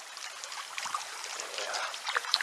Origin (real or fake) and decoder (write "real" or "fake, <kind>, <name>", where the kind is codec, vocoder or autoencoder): fake, vocoder, BigVGAN v2